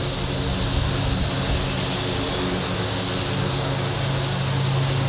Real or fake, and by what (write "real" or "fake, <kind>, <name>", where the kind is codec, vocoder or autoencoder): real